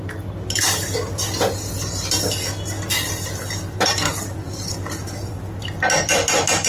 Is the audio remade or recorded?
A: recorded